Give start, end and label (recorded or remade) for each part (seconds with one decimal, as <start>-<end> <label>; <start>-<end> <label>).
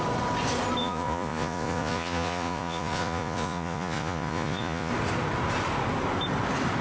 0.0-0.8 recorded; 0.8-4.9 remade; 4.9-6.8 recorded